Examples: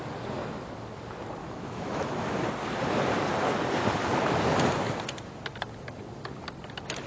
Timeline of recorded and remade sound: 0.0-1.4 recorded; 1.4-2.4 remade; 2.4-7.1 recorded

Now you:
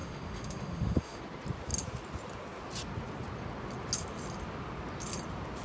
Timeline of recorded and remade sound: 0.0-1.2 remade; 1.2-5.6 recorded